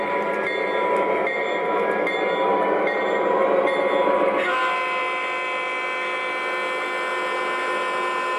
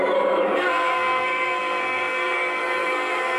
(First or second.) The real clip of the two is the first